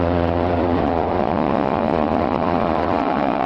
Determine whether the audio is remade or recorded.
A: remade